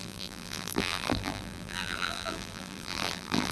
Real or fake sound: fake